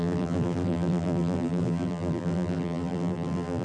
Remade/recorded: remade